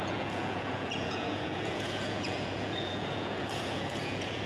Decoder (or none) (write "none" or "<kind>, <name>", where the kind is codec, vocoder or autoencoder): vocoder, Vocos